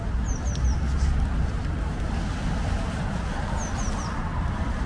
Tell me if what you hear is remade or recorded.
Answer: recorded